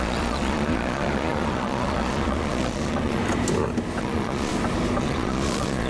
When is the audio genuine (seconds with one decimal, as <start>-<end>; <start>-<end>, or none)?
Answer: 3.2-4.0; 4.5-5.0